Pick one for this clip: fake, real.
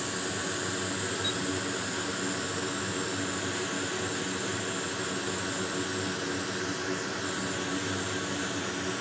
real